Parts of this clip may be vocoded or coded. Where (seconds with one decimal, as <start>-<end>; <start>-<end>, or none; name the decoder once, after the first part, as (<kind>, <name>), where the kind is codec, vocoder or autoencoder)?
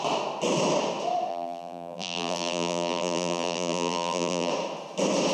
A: 1.3-4.5 (vocoder, BigVGAN v2)